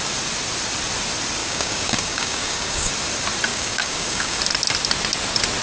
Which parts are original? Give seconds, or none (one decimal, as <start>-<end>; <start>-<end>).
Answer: 0.0-1.4; 2.9-3.5; 4.4-5.6